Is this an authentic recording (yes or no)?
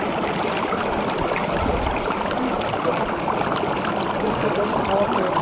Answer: yes